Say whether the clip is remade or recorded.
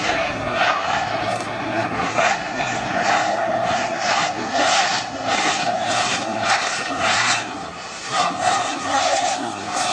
remade